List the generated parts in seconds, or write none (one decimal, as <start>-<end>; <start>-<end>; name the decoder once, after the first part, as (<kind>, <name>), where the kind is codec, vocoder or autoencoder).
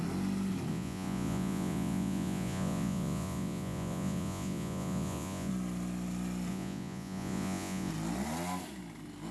0.7-5.5 (vocoder, Vocos); 6.5-7.9